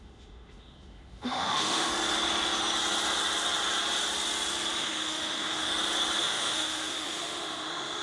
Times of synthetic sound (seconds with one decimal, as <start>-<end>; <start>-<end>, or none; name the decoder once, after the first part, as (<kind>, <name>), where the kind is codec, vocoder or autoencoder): 0.0-1.9 (autoencoder, DAC-VAE); 4.8-5.7; 6.2-8.0